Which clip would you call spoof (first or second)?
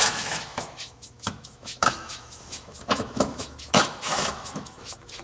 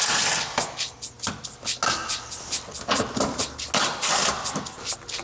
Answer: first